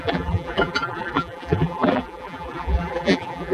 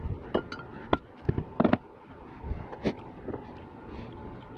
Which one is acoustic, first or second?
second